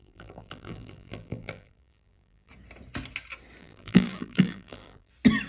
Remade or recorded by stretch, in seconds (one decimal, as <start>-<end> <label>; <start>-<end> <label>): 0.0-2.5 remade; 2.5-3.6 recorded; 3.6-5.1 remade; 5.1-5.5 recorded